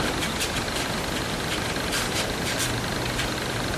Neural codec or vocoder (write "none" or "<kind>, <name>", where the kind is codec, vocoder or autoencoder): vocoder, BigVGAN v2